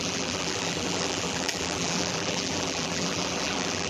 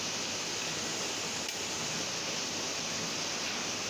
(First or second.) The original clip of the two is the second